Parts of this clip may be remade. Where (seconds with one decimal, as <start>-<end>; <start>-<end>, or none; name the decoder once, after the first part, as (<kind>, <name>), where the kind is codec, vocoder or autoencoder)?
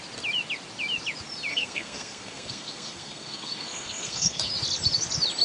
1.5-4.5 (codec, SNAC)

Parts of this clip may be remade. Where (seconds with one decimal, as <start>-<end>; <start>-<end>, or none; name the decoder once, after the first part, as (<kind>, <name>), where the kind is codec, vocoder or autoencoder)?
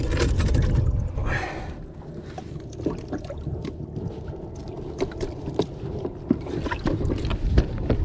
none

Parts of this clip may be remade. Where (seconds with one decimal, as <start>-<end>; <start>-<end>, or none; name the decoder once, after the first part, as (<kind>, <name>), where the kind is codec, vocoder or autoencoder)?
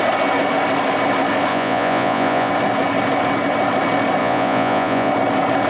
1.5-2.5 (vocoder, Vocos); 4.2-5.1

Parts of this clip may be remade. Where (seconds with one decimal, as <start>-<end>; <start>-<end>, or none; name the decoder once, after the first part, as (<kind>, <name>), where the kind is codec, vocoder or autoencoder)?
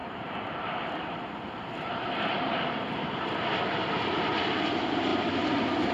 0.0-3.5 (vocoder, BigVGAN v2)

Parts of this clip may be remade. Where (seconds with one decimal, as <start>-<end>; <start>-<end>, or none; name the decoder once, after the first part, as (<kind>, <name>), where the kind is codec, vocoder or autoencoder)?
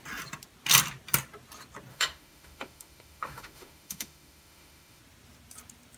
1.9-5.0 (autoencoder, DAC-VAE)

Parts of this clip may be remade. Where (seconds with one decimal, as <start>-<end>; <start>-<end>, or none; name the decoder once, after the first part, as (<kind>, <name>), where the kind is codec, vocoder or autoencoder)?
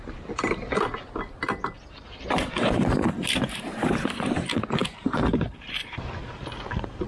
3.2-4.3 (vocoder, BigVGAN v2); 4.8-6.1